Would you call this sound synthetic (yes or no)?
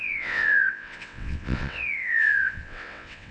yes